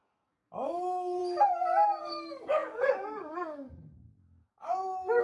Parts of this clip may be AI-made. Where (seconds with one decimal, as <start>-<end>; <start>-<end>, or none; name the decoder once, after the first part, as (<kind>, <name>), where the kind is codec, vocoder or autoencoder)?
0.0-1.2 (codec, DAC); 2.0-5.2